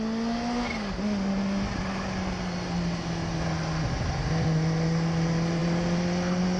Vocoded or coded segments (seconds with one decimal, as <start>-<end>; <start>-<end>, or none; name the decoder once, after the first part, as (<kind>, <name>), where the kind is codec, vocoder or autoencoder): none